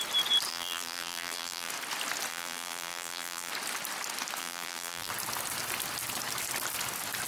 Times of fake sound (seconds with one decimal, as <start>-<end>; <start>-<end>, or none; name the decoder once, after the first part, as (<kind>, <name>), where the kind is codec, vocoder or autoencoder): 0.5-1.7 (vocoder, BigVGAN v2); 2.3-3.5; 4.4-5.1